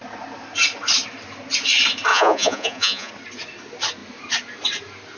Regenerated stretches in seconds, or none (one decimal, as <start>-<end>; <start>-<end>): 2.1-3.1